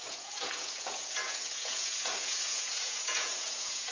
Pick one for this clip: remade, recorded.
remade